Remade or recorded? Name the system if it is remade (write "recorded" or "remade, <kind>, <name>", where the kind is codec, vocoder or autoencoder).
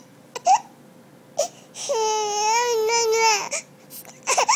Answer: recorded